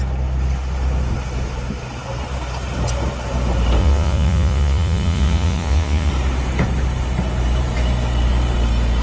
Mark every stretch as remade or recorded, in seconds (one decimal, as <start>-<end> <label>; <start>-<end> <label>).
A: 0.0-3.8 recorded; 3.8-6.1 remade; 6.1-9.0 recorded